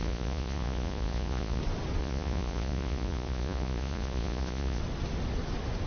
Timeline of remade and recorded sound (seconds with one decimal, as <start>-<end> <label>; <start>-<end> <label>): 0.0-1.6 remade; 1.6-2.0 recorded; 2.0-4.8 remade; 4.8-5.9 recorded